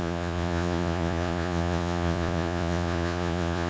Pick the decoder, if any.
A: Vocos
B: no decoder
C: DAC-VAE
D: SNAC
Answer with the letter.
A